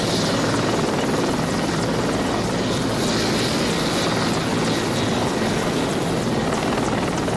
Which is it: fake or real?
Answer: real